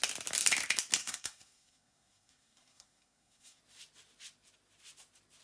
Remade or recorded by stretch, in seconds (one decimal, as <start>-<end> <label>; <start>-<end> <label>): 0.0-1.0 recorded; 1.0-3.6 remade; 3.6-5.4 recorded